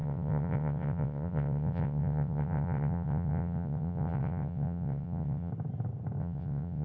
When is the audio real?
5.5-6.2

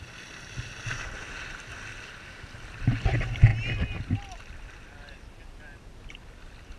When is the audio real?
0.0-6.8

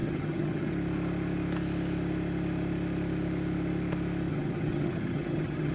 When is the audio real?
0.7-4.3

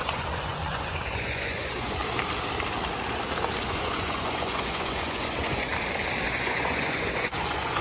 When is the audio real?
2.0-3.6; 5.7-6.2

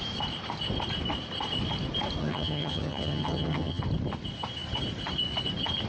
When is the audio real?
0.0-2.2; 3.8-5.9

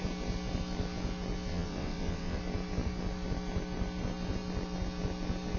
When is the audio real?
0.0-1.5; 2.4-5.6

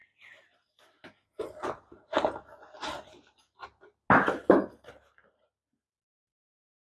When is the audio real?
0.0-6.9

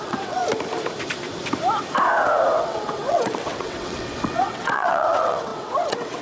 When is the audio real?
0.4-2.6